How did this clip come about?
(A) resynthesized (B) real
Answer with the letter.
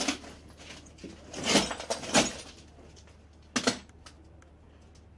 B